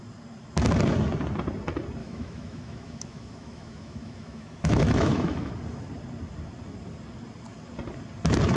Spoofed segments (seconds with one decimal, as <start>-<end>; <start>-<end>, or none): 2.0-5.5